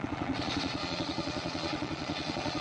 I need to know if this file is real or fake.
fake